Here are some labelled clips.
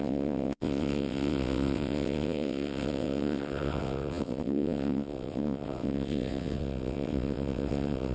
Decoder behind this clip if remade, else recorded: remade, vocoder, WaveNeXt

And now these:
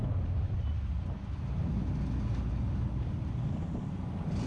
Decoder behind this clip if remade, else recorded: recorded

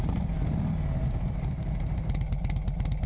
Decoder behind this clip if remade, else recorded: recorded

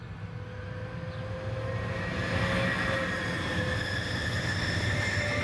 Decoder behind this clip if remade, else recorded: recorded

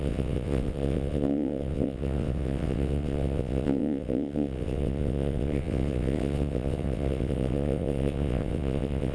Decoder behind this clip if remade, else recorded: remade, vocoder, WaveNeXt